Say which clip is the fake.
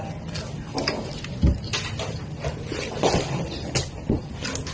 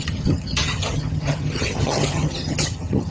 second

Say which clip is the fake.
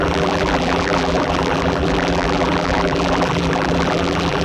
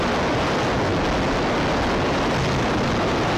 first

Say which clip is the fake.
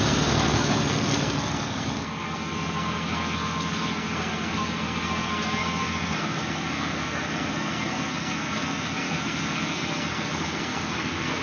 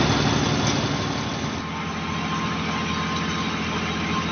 first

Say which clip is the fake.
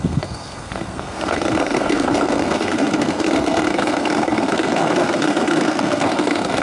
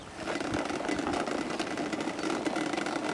first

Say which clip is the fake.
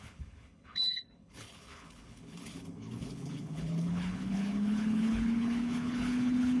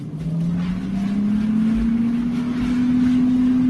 first